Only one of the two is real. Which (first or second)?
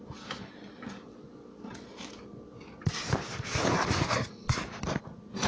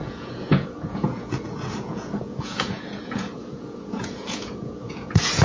first